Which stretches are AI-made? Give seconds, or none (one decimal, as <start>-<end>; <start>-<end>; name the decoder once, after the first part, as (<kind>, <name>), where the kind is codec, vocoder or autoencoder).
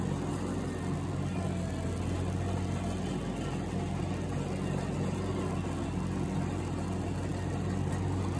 none